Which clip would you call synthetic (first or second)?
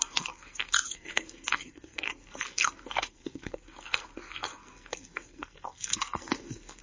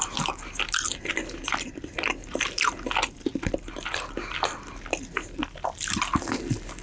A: first